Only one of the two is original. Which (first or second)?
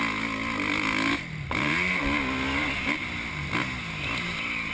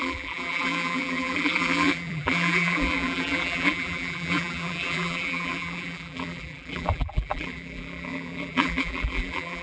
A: first